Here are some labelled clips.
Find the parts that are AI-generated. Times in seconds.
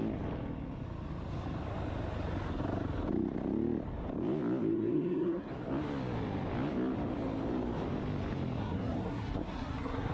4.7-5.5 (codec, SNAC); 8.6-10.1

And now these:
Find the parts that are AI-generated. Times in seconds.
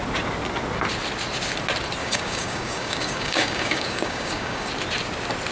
2.0-4.7 (codec, DAC)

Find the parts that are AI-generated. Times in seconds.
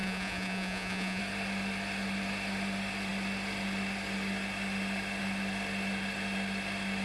0.0-1.2 (vocoder, Vocos)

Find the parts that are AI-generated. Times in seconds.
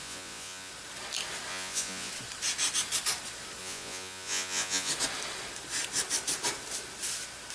0.0-0.7 (vocoder, Vocos); 1.5-2.1; 3.6-4.9